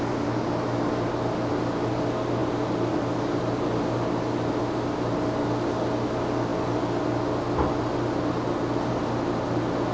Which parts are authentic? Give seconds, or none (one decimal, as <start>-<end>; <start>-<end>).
0.0-9.9